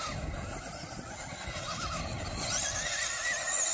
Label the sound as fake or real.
real